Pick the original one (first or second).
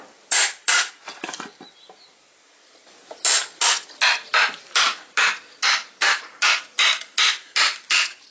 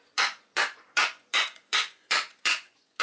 first